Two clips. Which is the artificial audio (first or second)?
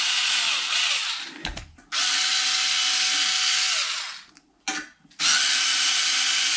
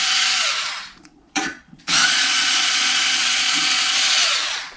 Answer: second